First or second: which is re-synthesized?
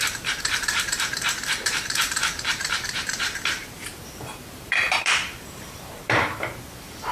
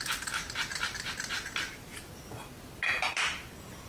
first